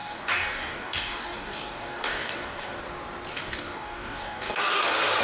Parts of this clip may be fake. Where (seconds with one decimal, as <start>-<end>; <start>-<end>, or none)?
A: 0.0-2.8; 3.3-4.8